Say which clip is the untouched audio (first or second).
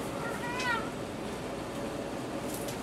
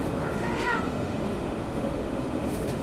first